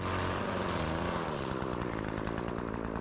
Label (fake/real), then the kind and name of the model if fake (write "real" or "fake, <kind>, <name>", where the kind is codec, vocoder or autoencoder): fake, vocoder, BigVGAN v2